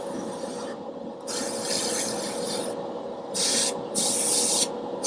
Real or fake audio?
real